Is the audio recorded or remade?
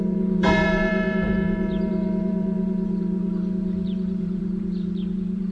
remade